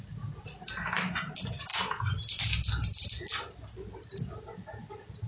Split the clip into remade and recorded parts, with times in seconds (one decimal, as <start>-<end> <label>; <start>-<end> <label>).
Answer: 0.0-5.3 recorded